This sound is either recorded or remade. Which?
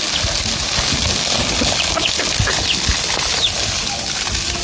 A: recorded